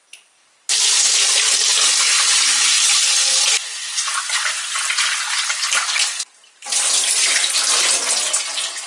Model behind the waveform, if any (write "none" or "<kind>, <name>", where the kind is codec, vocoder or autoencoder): none